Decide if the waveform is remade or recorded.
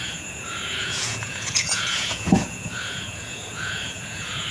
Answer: remade